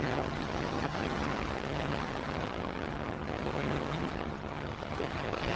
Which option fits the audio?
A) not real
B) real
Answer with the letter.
A